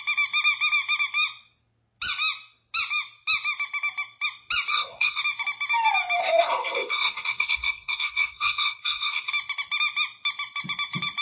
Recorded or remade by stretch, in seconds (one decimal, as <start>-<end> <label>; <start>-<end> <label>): 0.0-4.7 recorded; 4.7-5.2 remade; 5.2-6.2 recorded; 6.2-9.3 remade; 9.3-11.2 recorded